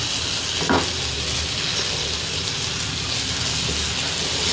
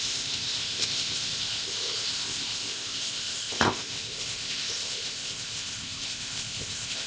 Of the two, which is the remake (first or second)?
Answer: second